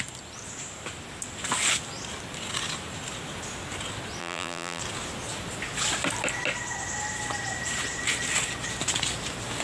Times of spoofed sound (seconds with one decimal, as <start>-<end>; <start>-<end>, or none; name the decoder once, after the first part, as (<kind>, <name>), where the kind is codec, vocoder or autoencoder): 4.2-4.8 (vocoder, BigVGAN v2)